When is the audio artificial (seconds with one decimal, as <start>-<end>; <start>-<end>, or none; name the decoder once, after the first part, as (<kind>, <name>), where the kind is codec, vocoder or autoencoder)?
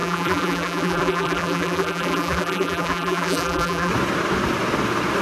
0.0-3.9 (vocoder, BigVGAN v2)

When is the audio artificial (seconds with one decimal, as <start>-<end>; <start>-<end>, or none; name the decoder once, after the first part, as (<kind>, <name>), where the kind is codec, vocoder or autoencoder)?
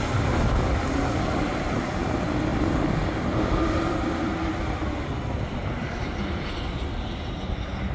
2.5-4.2 (vocoder, BigVGAN v2); 5.6-6.5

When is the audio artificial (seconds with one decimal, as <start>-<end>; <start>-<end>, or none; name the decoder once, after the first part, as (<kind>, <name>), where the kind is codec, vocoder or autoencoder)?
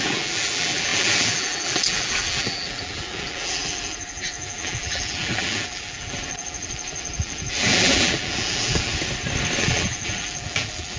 0.0-8.9 (vocoder, BigVGAN v2); 9.6-11.0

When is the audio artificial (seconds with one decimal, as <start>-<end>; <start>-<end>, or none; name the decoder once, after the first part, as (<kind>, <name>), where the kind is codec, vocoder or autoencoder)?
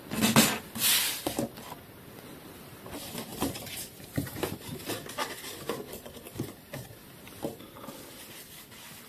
3.3-4.9 (vocoder, BigVGAN v2)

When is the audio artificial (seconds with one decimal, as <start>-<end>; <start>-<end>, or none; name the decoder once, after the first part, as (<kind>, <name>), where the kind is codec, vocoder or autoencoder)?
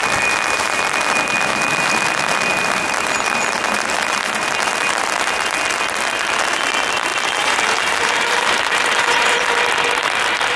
7.1-9.6 (vocoder, BigVGAN v2)